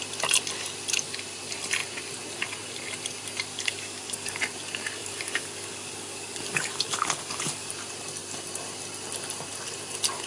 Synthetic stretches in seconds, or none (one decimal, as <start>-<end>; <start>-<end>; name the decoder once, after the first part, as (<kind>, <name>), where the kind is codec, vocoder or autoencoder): 3.5-4.4 (codec, DAC); 5.0-7.7